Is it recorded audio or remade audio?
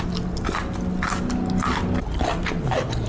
recorded